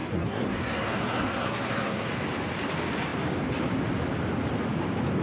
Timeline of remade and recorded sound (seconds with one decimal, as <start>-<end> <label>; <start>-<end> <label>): 0.0-2.1 remade; 2.1-5.2 recorded